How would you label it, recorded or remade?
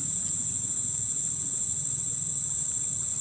recorded